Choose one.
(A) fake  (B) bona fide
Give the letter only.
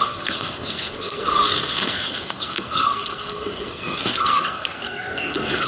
A